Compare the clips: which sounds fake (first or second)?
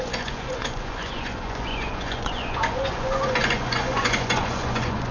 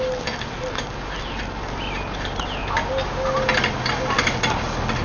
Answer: first